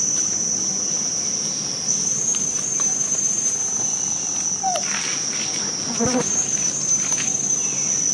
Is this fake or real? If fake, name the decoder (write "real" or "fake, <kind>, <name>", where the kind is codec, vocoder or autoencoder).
real